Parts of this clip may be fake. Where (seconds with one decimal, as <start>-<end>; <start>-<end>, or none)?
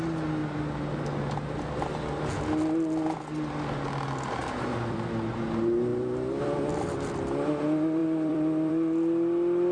0.4-0.9; 4.4-5.3; 8.0-8.7